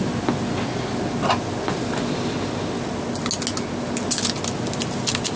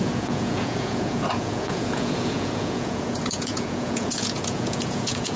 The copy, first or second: second